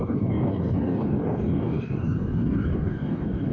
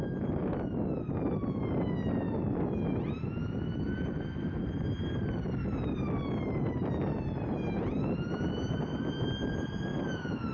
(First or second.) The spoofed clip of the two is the first